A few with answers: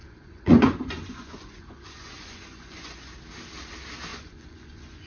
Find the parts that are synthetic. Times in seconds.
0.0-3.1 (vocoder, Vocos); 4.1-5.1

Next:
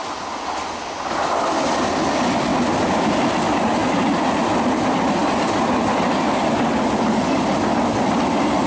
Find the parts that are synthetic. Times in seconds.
2.5-3.1 (vocoder, BigVGAN v2); 3.8-4.3

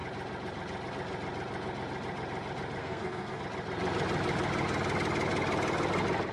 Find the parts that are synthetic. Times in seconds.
2.8-3.4 (codec, SNAC)

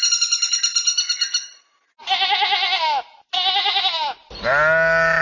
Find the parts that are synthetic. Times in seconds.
none

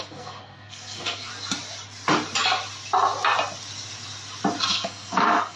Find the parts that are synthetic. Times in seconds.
0.0-1.3 (codec, SNAC); 4.7-5.6

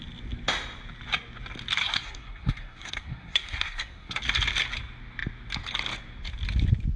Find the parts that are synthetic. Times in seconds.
1.8-4.2 (codec, SNAC)